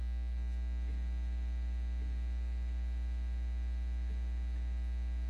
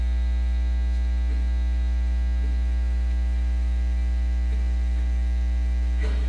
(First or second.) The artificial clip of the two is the second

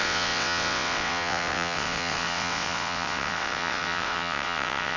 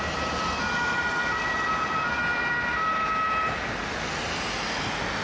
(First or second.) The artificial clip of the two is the first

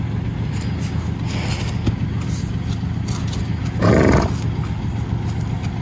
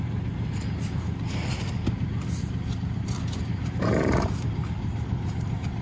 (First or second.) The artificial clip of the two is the second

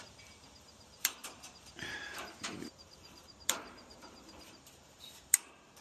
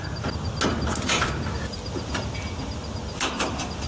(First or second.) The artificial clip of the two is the first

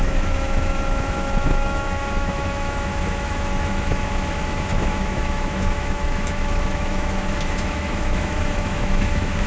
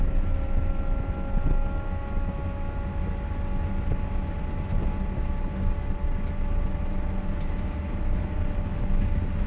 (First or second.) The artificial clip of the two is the first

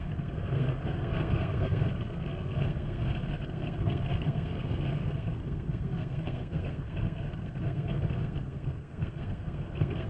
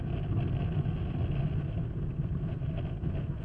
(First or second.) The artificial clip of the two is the first